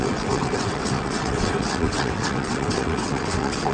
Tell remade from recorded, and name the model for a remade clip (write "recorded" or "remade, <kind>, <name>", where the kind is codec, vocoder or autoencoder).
remade, vocoder, WaveNeXt